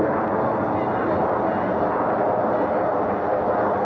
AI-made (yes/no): no